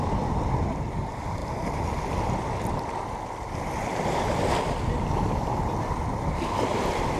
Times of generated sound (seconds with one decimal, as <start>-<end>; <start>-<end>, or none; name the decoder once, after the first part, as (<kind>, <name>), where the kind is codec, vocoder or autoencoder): none